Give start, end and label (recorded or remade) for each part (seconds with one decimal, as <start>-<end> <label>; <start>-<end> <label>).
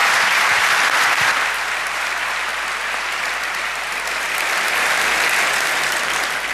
0.0-6.5 recorded